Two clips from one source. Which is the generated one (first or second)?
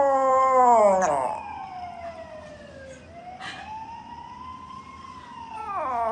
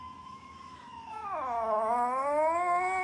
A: second